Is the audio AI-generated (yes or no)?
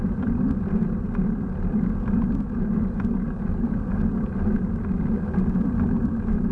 no